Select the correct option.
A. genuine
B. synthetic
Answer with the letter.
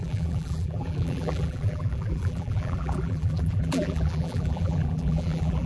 B